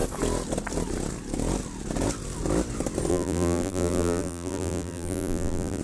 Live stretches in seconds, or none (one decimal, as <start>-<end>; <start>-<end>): 0.0-3.1

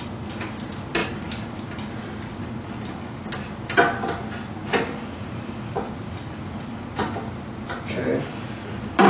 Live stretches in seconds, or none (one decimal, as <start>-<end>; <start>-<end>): 0.0-8.1

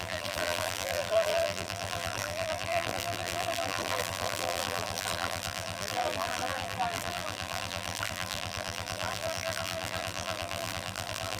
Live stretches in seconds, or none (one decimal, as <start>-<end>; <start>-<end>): none